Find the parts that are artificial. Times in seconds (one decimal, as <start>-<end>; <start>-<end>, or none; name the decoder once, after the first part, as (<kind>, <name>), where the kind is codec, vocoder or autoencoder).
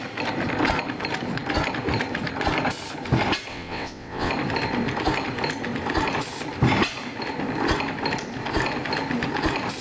3.5-4.3 (vocoder, WaveNeXt)